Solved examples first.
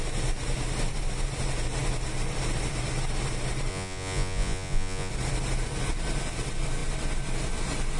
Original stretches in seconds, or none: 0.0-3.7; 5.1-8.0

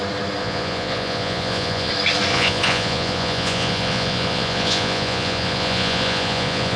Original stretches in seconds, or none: 0.0-0.4; 1.9-2.3

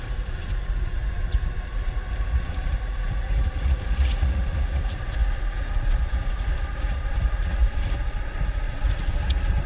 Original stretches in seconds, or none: none

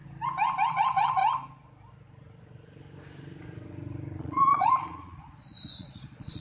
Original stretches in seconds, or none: 0.0-0.7; 1.2-4.2

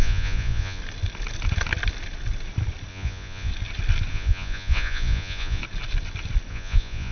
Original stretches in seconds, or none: 0.8-2.9; 3.5-4.1; 5.6-6.5

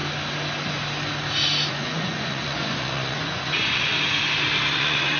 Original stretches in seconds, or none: 0.0-1.7; 3.9-4.7

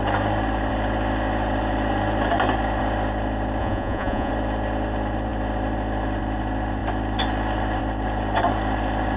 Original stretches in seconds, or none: 0.0-3.6; 4.3-9.2

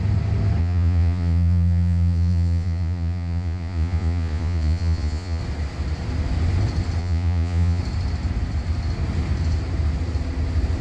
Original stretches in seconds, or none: 0.0-0.6; 5.4-7.0; 7.8-10.8